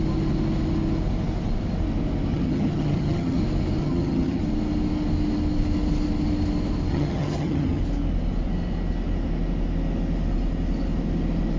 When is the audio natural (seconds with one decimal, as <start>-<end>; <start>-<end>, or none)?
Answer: 0.0-2.3; 3.4-3.8; 4.4-6.9; 7.8-11.6